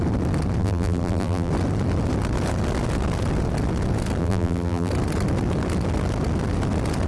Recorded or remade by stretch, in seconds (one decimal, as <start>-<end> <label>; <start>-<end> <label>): 0.0-0.6 recorded; 0.6-1.5 remade; 1.5-4.2 recorded; 4.2-4.9 remade; 4.9-7.1 recorded